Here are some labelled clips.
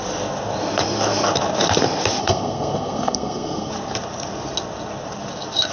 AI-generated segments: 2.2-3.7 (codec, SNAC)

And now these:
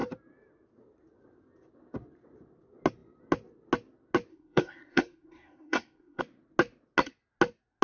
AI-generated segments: 4.3-6.2 (codec, SNAC)